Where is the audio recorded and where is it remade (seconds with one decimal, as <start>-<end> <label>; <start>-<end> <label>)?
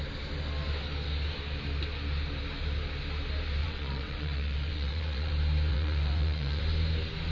0.0-3.6 recorded; 3.6-5.3 remade; 5.3-5.7 recorded; 5.7-6.6 remade; 6.6-7.3 recorded